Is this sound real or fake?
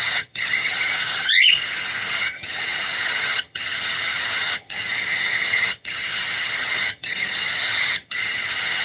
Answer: fake